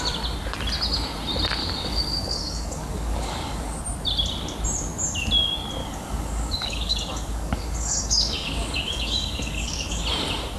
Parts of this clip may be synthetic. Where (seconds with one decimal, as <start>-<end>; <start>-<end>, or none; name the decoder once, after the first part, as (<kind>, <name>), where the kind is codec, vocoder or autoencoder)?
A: 1.6-3.8 (codec, DAC); 5.8-10.0